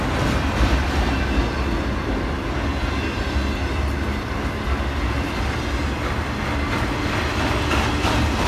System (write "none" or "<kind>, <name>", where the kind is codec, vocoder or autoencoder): none